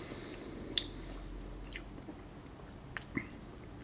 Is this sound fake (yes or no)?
no